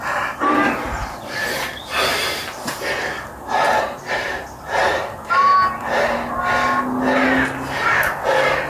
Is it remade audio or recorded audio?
recorded